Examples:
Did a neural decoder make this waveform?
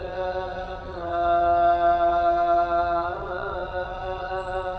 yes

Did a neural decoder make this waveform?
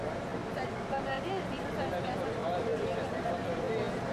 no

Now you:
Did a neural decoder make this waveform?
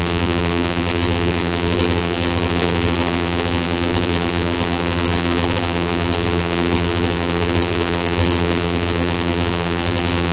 yes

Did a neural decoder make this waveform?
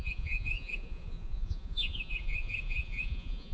yes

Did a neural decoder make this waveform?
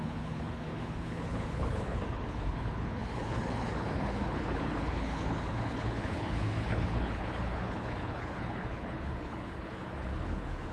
yes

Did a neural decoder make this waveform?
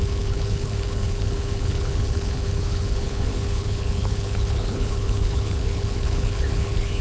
yes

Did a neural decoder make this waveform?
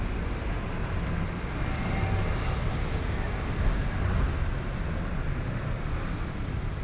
no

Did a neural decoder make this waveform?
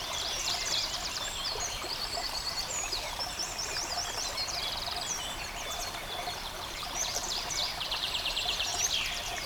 yes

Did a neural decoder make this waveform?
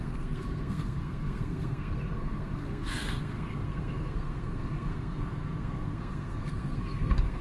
yes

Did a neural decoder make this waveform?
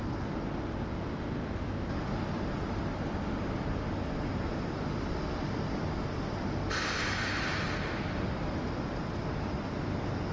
no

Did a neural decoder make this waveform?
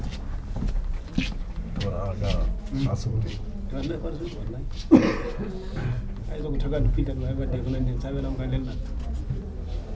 no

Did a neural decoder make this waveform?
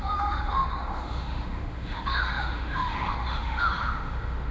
yes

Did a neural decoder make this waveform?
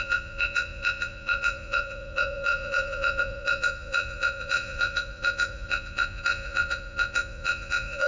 yes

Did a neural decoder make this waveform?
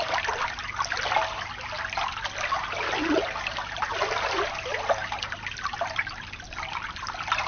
no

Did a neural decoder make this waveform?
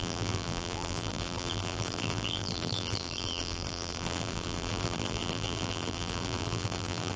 yes